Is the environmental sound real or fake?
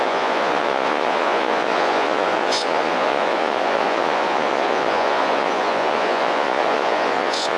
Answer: fake